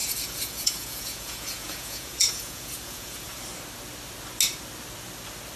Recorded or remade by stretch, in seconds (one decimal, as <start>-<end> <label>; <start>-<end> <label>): 0.0-3.4 remade; 3.4-5.6 recorded